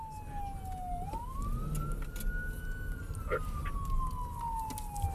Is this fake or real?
real